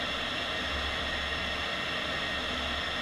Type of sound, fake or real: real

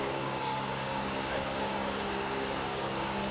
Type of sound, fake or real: fake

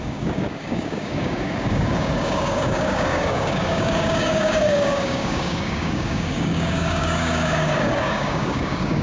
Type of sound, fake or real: fake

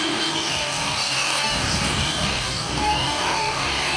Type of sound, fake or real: fake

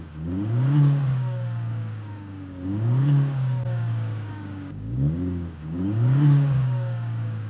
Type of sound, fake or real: fake